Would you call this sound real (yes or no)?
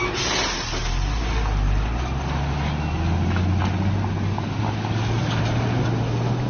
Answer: yes